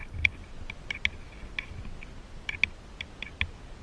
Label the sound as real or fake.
real